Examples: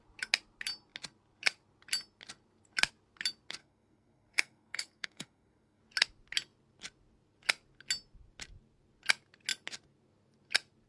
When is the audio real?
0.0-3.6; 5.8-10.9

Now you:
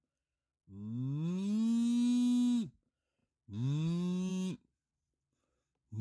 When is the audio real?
0.0-6.0

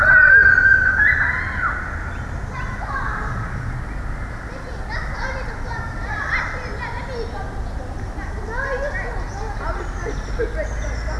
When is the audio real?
0.0-11.2

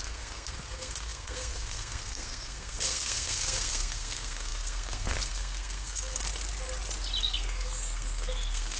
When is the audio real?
6.3-7.2